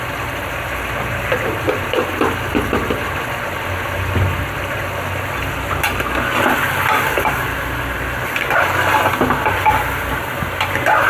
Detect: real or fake real